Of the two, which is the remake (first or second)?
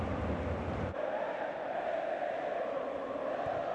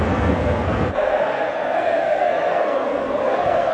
second